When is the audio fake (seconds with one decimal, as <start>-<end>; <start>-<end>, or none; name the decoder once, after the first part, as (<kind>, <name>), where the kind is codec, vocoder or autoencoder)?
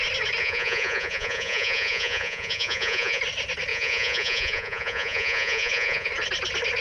0.4-3.2 (vocoder, Vocos); 3.7-6.1